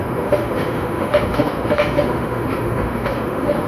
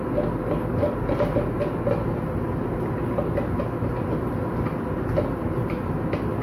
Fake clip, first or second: first